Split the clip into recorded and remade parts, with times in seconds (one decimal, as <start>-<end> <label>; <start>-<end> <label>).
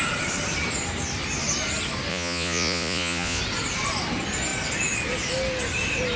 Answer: 0.0-2.1 recorded; 2.1-3.4 remade; 3.4-6.2 recorded